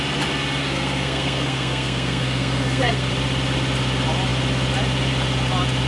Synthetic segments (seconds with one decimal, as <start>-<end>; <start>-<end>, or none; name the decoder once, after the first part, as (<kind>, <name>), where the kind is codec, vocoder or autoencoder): 0.6-3.1 (codec, SNAC)